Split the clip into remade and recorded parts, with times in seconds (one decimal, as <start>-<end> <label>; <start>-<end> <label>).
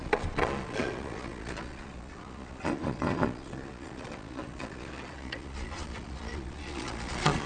0.0-7.5 remade